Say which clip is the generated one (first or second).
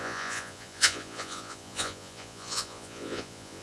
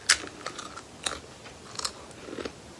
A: first